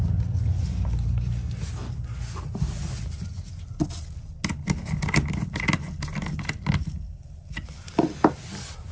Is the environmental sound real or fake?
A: real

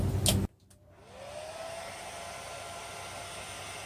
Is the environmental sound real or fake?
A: real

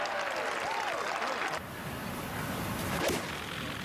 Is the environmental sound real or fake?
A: real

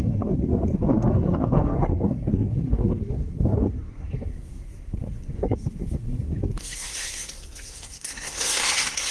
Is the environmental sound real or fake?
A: fake